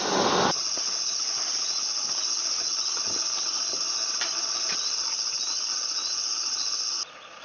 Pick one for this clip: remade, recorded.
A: recorded